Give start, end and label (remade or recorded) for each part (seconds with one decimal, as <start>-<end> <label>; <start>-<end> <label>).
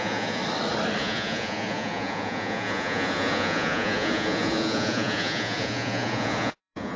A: 0.0-0.4 remade; 0.4-1.0 recorded; 1.0-7.0 remade